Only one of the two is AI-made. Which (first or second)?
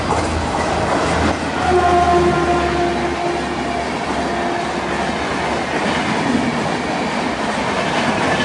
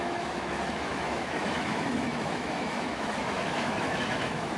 second